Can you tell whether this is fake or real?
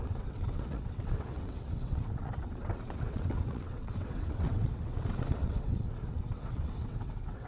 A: fake